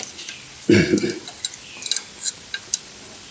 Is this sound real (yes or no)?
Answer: yes